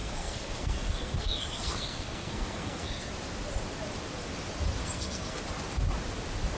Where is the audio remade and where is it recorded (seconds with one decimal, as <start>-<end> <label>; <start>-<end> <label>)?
0.0-3.1 remade; 3.1-4.8 recorded; 4.8-5.4 remade; 5.4-6.6 recorded